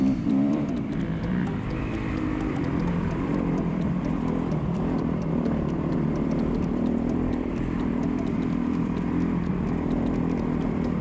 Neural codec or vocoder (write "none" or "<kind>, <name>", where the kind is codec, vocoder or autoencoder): vocoder, BigVGAN v2